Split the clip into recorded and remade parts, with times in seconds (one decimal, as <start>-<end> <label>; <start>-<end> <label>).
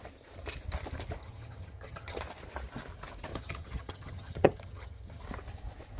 0.0-1.2 recorded; 1.2-2.2 remade; 2.2-3.3 recorded; 3.3-5.2 remade; 5.2-6.0 recorded